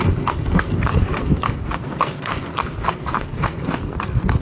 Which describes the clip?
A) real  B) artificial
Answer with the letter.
B